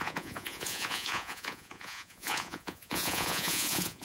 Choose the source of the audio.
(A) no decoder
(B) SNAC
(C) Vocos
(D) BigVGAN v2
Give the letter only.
C